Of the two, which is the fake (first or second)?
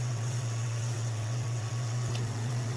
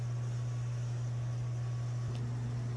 first